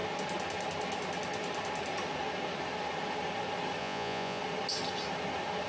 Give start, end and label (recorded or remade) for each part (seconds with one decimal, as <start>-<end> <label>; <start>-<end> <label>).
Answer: 0.0-3.8 recorded; 3.8-4.4 remade; 4.4-5.7 recorded